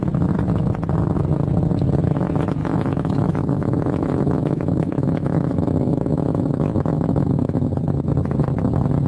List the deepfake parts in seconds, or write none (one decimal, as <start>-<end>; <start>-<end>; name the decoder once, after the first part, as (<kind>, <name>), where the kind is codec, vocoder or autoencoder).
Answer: 2.6-7.7 (autoencoder, DAC-VAE)

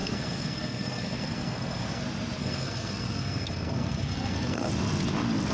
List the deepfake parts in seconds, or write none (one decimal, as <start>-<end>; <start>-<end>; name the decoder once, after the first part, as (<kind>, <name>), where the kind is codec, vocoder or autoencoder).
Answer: 0.0-2.0 (codec, SNAC); 2.4-4.7